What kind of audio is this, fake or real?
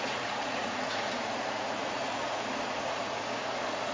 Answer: fake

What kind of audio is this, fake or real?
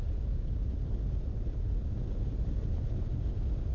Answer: real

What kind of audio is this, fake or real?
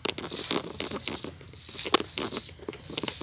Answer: real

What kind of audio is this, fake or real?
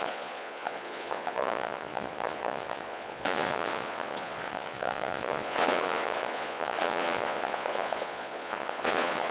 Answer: fake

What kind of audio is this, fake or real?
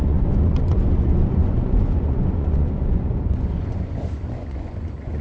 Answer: fake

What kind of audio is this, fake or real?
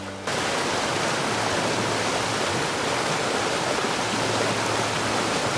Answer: real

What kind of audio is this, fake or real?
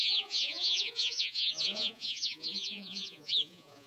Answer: fake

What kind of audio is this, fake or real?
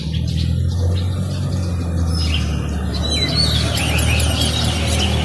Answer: real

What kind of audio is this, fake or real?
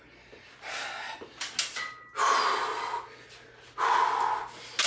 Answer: real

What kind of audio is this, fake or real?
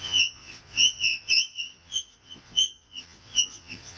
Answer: fake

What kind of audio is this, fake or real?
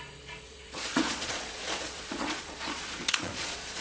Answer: fake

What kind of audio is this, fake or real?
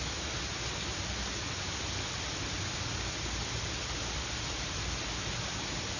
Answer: real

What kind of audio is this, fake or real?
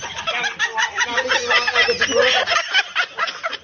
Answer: real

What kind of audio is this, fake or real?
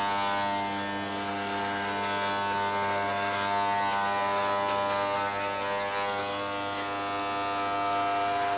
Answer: real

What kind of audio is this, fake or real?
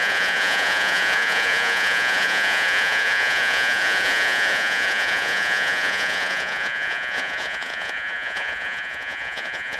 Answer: fake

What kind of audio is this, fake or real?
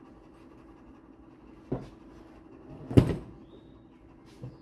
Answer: real